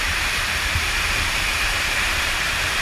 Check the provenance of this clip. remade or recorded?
remade